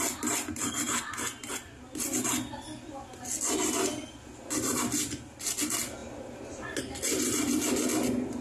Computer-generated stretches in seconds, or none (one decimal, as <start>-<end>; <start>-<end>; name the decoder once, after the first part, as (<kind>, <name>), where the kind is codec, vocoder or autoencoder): none